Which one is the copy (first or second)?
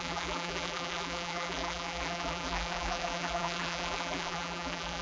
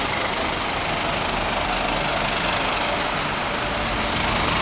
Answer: first